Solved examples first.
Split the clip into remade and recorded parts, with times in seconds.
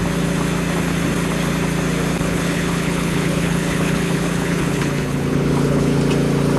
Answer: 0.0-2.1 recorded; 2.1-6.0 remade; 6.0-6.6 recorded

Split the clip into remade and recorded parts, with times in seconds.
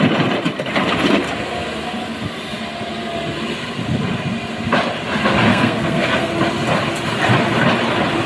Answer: 0.0-5.5 recorded; 5.5-6.3 remade; 6.3-8.3 recorded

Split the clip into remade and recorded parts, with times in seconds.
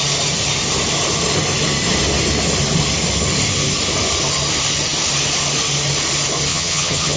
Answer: 0.0-6.5 recorded; 6.5-7.2 remade